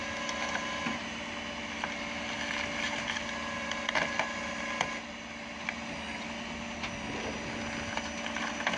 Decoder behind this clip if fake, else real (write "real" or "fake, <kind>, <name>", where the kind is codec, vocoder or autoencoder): real